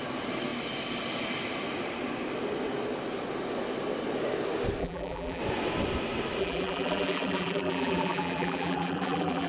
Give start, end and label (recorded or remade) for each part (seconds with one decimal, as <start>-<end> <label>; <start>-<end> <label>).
0.0-4.8 recorded; 4.8-5.4 remade; 5.4-6.4 recorded; 6.4-9.5 remade

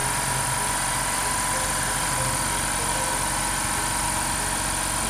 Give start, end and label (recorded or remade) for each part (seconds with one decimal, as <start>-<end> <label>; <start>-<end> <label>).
0.0-5.1 recorded

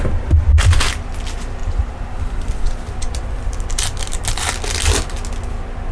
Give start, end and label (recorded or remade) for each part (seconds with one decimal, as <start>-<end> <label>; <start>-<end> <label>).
0.0-1.6 recorded; 1.6-4.3 remade; 4.3-5.9 recorded

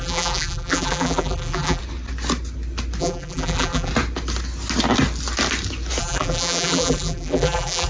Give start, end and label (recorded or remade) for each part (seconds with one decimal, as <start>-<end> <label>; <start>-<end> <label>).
0.0-1.8 remade; 1.8-3.0 recorded; 3.0-3.9 remade; 3.9-6.0 recorded; 6.0-7.9 remade

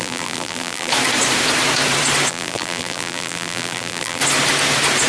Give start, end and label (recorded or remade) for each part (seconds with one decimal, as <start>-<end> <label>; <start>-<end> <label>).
0.0-0.9 remade; 0.9-2.3 recorded; 2.3-4.2 remade; 4.2-5.1 recorded

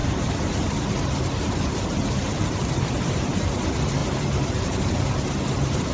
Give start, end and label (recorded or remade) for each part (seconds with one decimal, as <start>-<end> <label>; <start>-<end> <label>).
0.0-3.5 remade; 3.5-4.0 recorded; 4.0-5.0 remade; 5.0-5.9 recorded

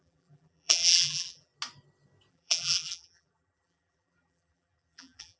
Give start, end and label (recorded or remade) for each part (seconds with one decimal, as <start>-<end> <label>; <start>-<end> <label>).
0.0-1.5 remade; 1.5-2.3 recorded; 2.3-5.4 remade

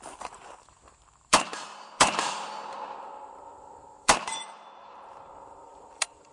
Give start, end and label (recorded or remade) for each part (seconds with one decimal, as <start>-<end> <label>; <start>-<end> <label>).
0.0-6.3 remade